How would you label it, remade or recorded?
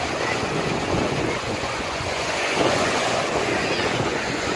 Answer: remade